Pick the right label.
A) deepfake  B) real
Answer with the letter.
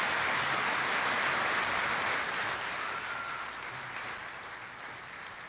B